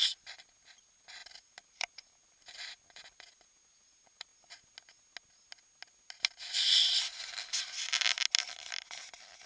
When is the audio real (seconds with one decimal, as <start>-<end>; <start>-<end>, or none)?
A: 4.3-9.5